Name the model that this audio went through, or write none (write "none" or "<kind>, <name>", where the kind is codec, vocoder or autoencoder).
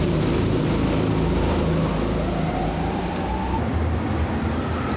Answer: none